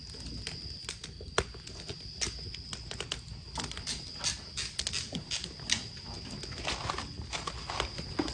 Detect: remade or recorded recorded